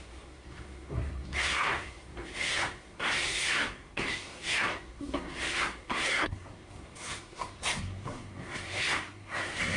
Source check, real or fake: fake